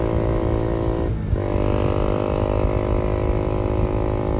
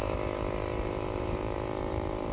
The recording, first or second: first